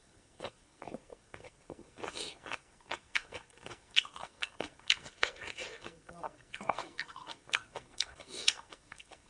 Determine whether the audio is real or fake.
fake